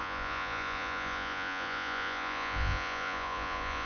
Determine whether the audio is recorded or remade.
remade